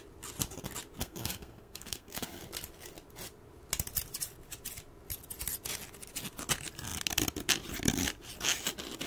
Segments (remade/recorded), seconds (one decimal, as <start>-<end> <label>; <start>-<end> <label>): 0.0-1.0 recorded; 1.0-2.4 remade; 2.4-9.1 recorded